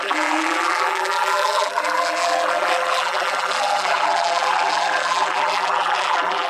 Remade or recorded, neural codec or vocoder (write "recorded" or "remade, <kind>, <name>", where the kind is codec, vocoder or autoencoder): remade, vocoder, BigVGAN v2